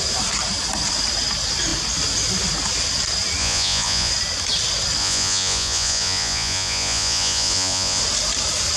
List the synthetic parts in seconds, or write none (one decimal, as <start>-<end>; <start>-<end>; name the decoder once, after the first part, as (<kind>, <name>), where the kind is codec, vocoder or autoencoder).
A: 3.4-4.1 (vocoder, Vocos); 5.0-8.0